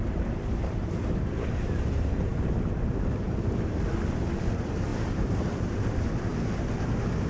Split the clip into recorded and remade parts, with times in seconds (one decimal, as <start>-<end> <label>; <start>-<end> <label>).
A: 0.0-6.3 remade; 6.3-7.3 recorded